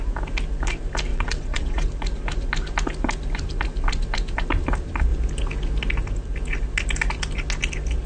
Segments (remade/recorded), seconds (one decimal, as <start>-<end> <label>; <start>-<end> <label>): 0.0-1.1 recorded; 1.1-1.9 remade; 1.9-8.1 recorded